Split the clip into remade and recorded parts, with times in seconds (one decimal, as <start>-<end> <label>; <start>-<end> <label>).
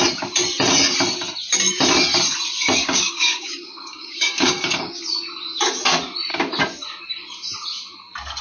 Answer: 0.0-2.8 recorded; 2.8-5.0 remade; 5.0-8.4 recorded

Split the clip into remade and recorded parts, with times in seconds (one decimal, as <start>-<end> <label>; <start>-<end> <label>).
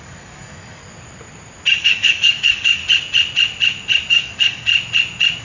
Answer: 0.0-0.8 remade; 0.8-1.8 recorded; 1.8-2.8 remade; 2.8-4.1 recorded; 4.1-4.7 remade; 4.7-5.4 recorded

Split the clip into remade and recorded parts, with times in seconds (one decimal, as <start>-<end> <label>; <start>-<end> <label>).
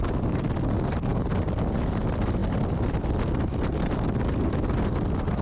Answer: 0.0-5.4 recorded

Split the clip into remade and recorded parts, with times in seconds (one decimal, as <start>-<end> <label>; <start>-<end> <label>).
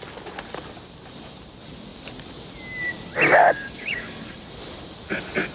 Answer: 0.0-3.4 recorded; 3.4-4.4 remade; 4.4-5.5 recorded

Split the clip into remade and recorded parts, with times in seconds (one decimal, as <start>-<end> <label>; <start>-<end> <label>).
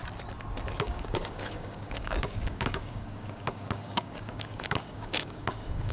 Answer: 0.0-0.7 recorded; 0.7-5.9 remade